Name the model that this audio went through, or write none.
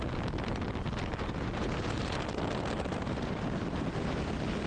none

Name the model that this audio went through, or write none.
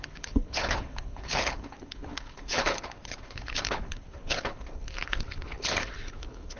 codec, HILCodec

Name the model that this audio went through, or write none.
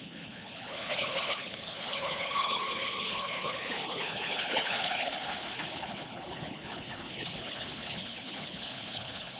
codec, HILCodec